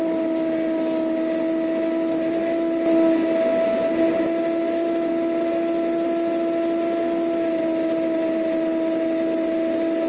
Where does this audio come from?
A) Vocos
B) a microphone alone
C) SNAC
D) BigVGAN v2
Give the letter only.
B